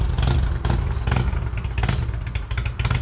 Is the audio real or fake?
real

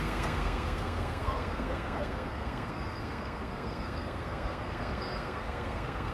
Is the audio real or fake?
fake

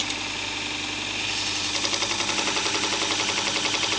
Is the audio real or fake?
real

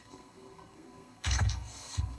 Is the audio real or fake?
fake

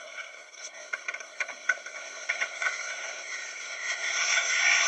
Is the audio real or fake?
fake